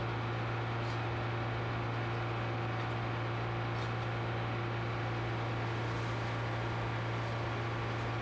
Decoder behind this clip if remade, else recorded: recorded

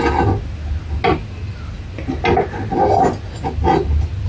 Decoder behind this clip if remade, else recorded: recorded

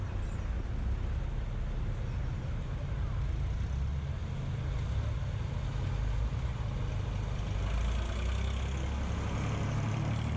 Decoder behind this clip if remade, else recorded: recorded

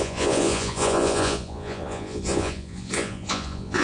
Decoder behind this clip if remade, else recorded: remade, vocoder, Vocos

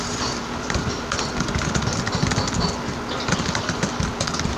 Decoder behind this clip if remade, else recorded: recorded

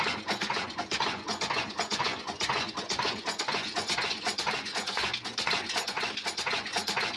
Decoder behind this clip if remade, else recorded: remade, vocoder, Vocos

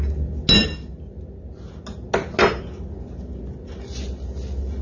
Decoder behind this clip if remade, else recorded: recorded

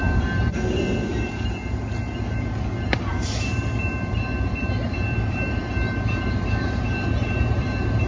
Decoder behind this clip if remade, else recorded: remade, vocoder, BigVGAN v2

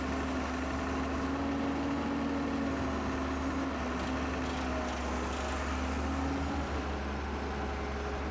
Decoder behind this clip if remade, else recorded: recorded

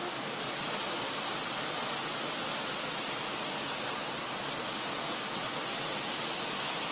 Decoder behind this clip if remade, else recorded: recorded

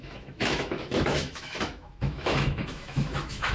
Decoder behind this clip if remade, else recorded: remade, autoencoder, DAC-VAE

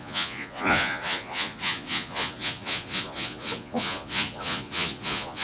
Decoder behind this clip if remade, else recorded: remade, vocoder, Vocos